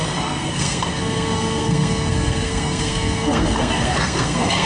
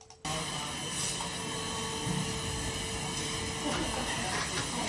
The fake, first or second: first